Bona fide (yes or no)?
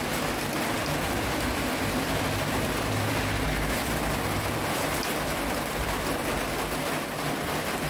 no